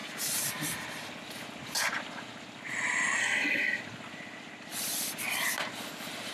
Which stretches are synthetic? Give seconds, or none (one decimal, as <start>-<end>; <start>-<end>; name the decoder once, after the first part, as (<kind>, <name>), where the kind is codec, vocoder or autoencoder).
3.2-3.8 (codec, SNAC)